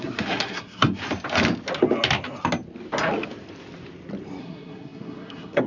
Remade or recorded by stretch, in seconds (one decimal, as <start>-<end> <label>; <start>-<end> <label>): 0.0-1.0 remade; 1.0-4.4 recorded; 4.4-5.7 remade